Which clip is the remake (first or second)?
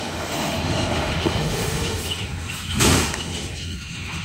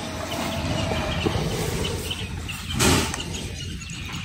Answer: first